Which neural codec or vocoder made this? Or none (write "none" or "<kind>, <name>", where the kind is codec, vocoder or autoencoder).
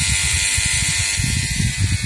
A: none